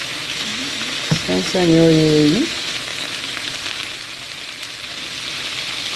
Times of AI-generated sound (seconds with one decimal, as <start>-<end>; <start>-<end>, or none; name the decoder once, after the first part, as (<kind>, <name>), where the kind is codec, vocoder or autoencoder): 0.0-0.9 (autoencoder, DAC-VAE)